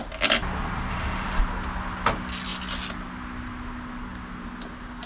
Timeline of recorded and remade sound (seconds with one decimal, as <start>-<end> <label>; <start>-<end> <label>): 0.0-0.9 recorded; 0.9-1.4 remade; 1.4-5.1 recorded